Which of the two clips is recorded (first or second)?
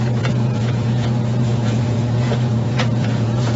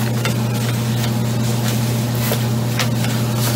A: second